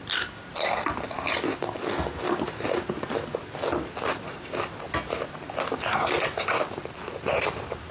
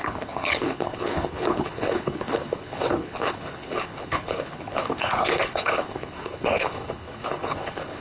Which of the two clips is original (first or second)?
first